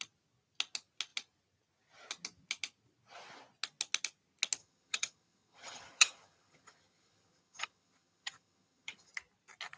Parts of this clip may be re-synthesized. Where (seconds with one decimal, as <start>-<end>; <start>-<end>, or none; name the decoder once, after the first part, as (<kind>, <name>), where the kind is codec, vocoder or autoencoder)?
4.6-9.1 (vocoder, HiFi-GAN)